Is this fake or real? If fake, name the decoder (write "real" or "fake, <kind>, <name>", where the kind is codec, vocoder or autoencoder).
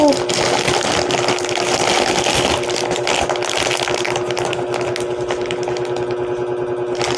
real